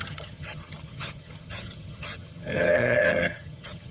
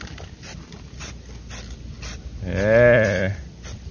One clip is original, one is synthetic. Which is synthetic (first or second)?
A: first